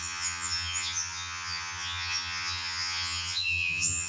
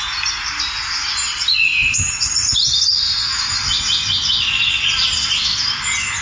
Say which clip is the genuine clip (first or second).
second